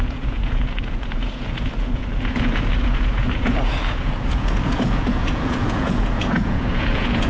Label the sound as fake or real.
fake